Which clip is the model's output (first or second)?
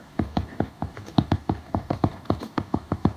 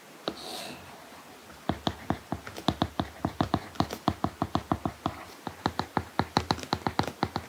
first